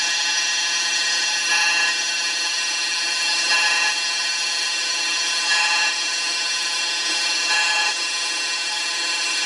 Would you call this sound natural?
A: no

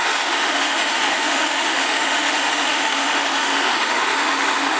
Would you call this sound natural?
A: no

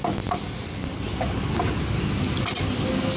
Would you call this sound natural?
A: yes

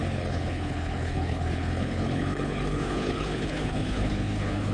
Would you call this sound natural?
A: no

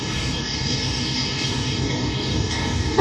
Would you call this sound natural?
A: no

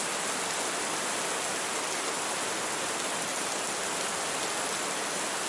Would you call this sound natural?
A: yes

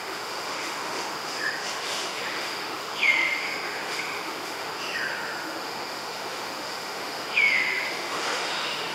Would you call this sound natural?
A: no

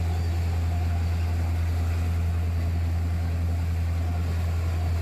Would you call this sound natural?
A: yes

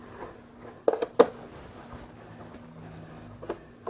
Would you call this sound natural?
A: yes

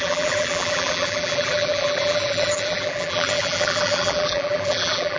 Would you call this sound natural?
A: no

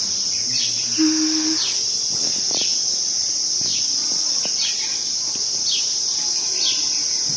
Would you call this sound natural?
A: yes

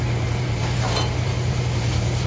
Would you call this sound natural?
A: no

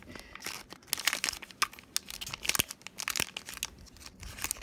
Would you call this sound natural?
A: yes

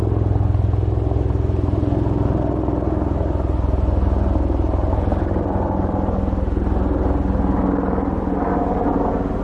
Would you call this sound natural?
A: yes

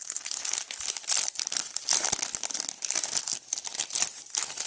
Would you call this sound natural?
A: yes